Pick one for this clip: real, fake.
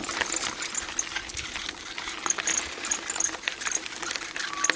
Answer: real